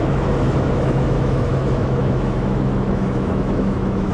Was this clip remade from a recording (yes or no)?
yes